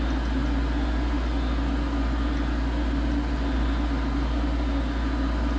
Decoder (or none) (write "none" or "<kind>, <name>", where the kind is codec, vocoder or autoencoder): none